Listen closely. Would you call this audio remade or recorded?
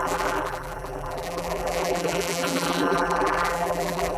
remade